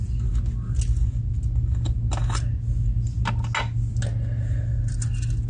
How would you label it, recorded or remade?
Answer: recorded